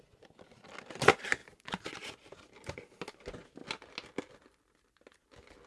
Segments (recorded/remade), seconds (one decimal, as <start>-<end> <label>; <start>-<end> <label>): 0.0-5.7 recorded

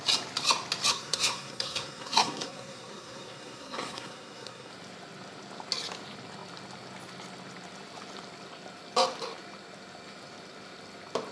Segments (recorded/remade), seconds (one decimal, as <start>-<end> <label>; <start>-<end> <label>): 0.0-0.9 recorded; 0.9-4.7 remade; 4.7-11.3 recorded

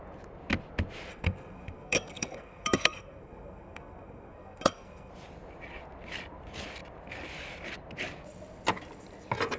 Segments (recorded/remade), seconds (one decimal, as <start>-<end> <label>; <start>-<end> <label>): 0.0-1.1 recorded; 1.1-5.1 remade; 5.1-9.6 recorded

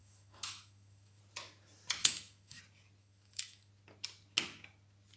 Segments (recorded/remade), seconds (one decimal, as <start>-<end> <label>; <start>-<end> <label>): 0.0-1.2 remade; 1.2-2.0 recorded; 2.0-2.6 remade; 2.6-3.0 recorded; 3.0-3.7 remade; 3.7-5.2 recorded

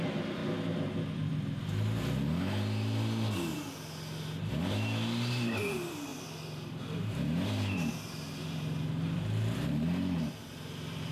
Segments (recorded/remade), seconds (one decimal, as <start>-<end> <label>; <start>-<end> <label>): 0.0-0.4 remade; 0.4-5.3 recorded; 5.3-11.1 remade

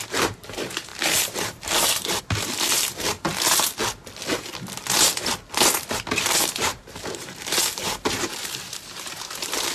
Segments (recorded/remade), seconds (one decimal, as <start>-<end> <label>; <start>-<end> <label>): 0.0-3.3 remade; 3.3-6.1 recorded; 6.1-9.7 remade

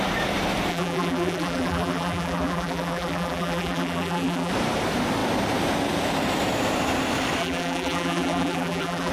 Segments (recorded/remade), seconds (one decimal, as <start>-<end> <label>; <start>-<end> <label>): 0.0-0.7 recorded; 0.7-4.5 remade; 4.5-7.4 recorded; 7.4-9.1 remade

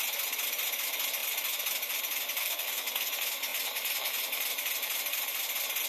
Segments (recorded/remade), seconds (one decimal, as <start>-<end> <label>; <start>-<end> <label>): 0.0-2.4 recorded; 2.4-3.1 remade; 3.1-5.9 recorded